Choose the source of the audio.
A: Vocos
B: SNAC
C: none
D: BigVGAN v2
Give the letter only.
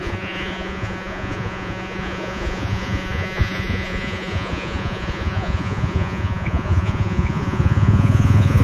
A